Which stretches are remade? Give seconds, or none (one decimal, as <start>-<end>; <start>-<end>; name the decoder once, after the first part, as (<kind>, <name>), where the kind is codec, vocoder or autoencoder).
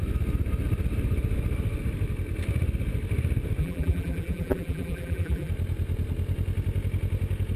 3.6-5.5 (vocoder, BigVGAN v2)